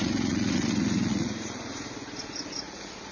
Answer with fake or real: fake